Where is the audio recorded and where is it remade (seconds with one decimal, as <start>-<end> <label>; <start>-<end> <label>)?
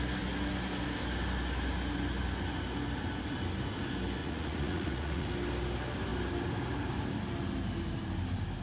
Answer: 0.0-4.2 recorded; 4.2-5.3 remade; 5.3-8.6 recorded